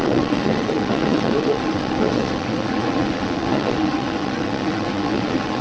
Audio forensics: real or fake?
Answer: fake